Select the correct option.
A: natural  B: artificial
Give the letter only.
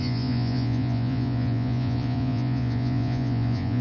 B